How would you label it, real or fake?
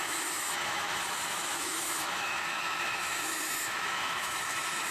fake